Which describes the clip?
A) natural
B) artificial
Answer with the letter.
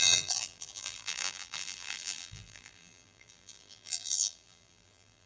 B